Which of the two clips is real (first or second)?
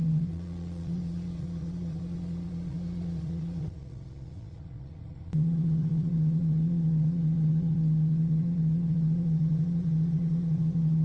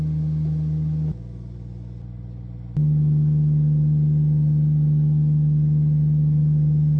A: second